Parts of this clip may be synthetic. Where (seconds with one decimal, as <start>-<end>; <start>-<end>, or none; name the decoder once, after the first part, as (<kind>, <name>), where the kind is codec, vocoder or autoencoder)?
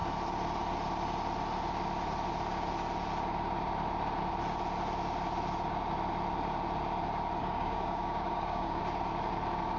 7.4-8.8 (codec, DAC)